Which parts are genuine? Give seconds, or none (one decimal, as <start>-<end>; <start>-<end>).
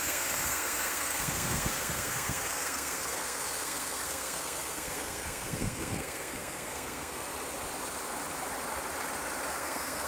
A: 7.3-9.5